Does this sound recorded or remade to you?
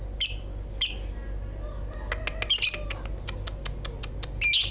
recorded